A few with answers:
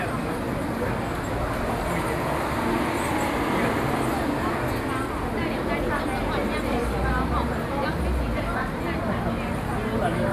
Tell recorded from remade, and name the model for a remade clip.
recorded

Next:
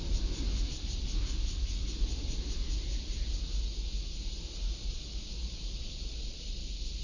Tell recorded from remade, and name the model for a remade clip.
recorded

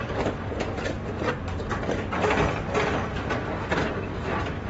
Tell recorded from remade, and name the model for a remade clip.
recorded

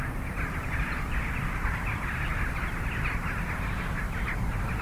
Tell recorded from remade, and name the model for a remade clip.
recorded